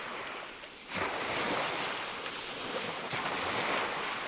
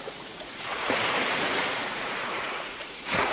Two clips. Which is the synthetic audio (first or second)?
second